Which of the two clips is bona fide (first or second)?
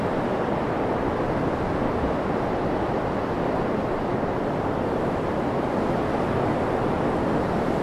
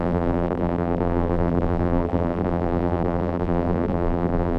first